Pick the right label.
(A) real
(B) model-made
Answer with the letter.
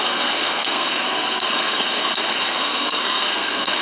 B